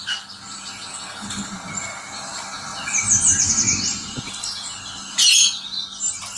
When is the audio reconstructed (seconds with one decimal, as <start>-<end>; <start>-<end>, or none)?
0.9-1.5